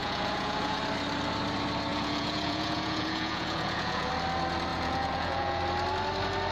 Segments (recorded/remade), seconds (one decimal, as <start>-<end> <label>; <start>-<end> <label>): 0.0-0.8 remade; 0.8-1.9 recorded; 1.9-4.1 remade; 4.1-4.7 recorded; 4.7-5.6 remade; 5.6-6.5 recorded